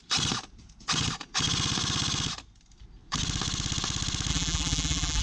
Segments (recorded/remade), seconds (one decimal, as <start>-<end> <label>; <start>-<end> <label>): 0.0-4.3 recorded; 4.3-5.2 remade